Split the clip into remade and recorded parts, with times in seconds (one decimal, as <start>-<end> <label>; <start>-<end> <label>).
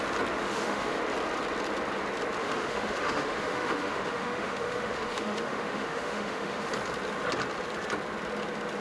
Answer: 0.0-0.4 recorded; 0.4-1.0 remade; 1.0-2.4 recorded; 2.4-6.7 remade; 6.7-8.8 recorded